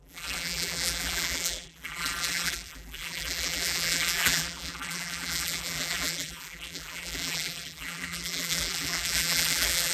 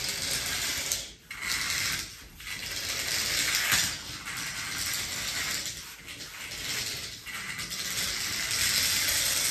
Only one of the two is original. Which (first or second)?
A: second